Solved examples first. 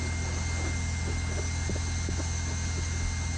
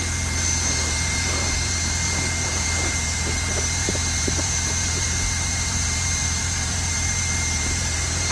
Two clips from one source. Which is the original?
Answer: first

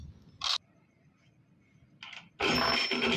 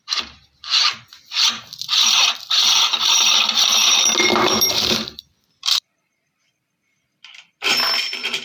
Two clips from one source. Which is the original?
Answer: first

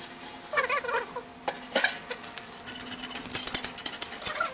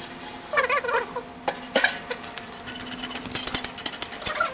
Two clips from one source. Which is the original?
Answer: first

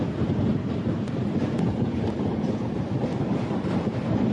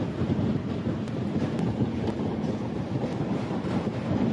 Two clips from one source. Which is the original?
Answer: second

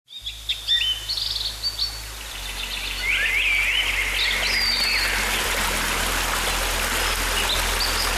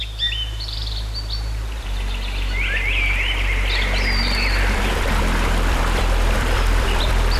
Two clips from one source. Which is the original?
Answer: first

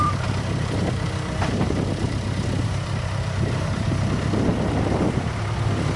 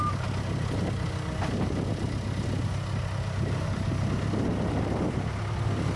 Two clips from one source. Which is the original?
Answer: second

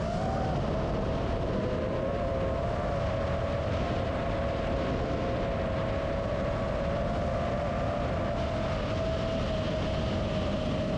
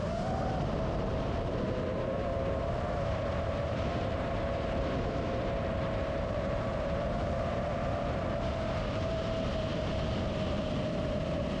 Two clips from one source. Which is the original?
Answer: first